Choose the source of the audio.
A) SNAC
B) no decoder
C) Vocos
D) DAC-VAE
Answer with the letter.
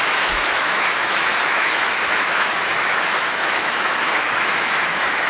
D